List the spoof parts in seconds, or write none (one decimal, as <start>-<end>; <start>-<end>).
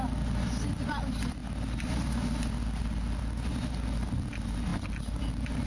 none